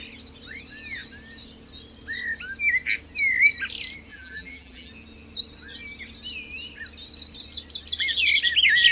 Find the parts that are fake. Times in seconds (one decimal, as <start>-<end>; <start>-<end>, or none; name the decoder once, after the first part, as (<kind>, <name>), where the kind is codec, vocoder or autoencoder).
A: 4.1-4.9 (vocoder, BigVGAN v2)